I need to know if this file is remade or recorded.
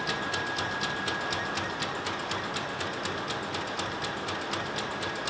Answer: recorded